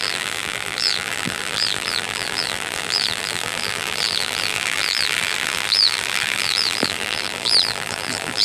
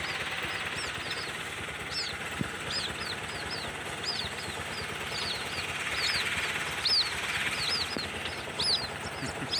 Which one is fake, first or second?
first